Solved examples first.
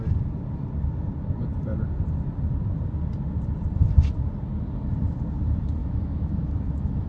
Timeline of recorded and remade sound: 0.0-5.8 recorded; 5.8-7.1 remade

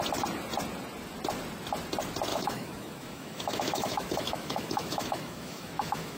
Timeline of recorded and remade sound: 0.0-2.3 recorded; 2.3-6.2 remade

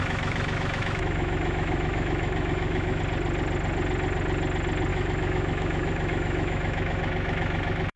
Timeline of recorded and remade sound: 0.0-3.0 remade; 3.0-4.9 recorded; 4.9-8.0 remade

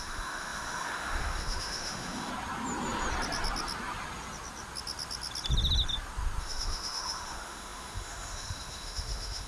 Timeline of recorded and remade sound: 0.0-2.3 remade; 2.3-6.4 recorded; 6.4-9.5 remade

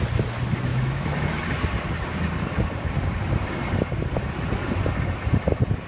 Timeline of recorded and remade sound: 0.0-0.7 recorded; 0.7-1.3 remade; 1.3-5.9 recorded

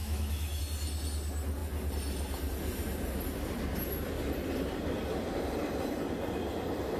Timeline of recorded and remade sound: 0.0-0.6 remade; 0.6-7.0 recorded